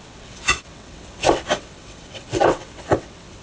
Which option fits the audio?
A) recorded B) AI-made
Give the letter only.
B